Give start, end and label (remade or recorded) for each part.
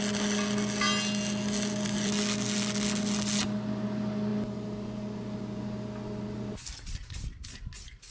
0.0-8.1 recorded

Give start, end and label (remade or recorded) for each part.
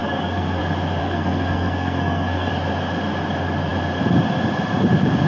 0.0-0.6 remade; 0.6-1.0 recorded; 1.0-2.5 remade; 2.5-5.3 recorded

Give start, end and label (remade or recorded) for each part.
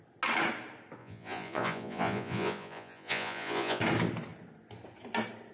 0.0-1.0 recorded; 1.0-3.8 remade; 3.8-5.5 recorded